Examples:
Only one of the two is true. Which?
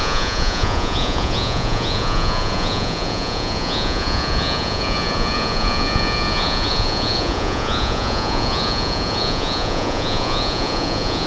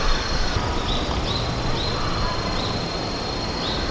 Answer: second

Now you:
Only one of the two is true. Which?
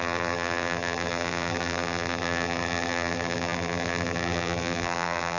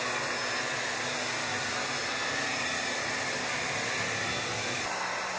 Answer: second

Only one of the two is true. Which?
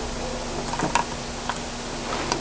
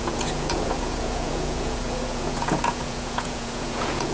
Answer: first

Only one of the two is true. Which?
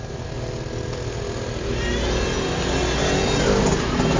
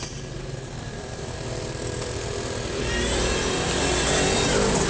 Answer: first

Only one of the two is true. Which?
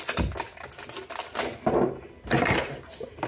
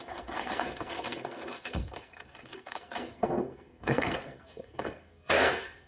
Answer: first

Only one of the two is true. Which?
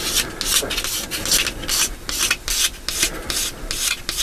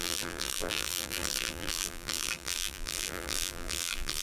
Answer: first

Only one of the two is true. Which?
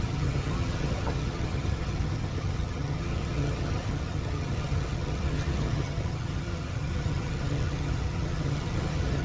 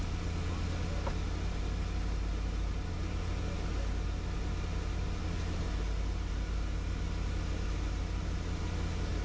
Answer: second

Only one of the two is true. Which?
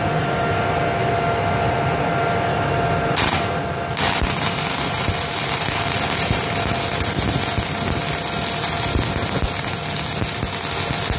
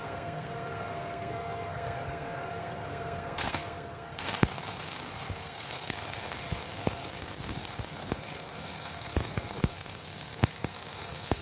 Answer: first